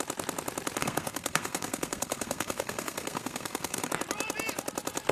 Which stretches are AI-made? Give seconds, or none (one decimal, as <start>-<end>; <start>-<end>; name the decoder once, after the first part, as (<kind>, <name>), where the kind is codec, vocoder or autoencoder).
0.8-3.9 (codec, SNAC)